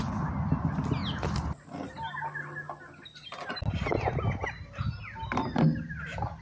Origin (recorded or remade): recorded